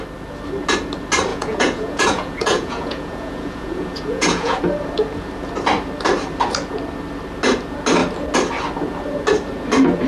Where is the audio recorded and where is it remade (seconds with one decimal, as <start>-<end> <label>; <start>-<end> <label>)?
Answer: 0.0-1.3 recorded; 1.3-4.6 remade; 4.6-10.1 recorded